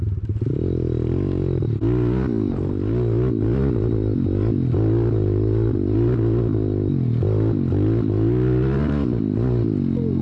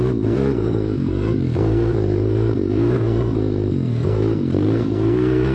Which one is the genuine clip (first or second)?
first